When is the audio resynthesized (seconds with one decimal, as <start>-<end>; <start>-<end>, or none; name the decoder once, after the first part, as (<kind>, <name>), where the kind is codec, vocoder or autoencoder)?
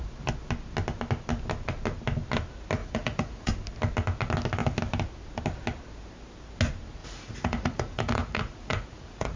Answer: 2.8-3.5 (vocoder, Vocos); 7.0-9.4